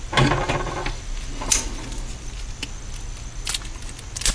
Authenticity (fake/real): real